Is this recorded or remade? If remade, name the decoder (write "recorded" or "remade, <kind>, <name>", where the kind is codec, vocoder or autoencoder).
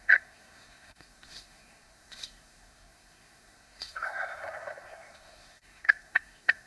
remade, codec, SNAC